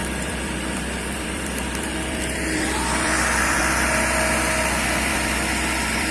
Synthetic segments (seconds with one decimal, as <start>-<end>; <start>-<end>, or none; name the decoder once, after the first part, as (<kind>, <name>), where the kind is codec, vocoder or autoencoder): 0.0-3.6 (vocoder, BigVGAN v2); 5.1-6.1